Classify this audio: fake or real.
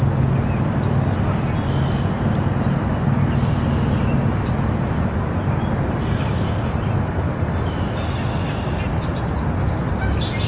real